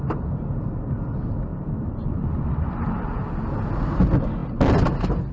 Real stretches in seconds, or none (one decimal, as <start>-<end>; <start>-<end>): 0.0-5.3